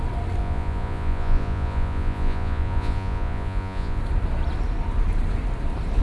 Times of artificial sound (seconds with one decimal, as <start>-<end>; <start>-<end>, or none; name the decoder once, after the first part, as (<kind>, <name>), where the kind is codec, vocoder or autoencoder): 0.4-4.0 (vocoder, Vocos)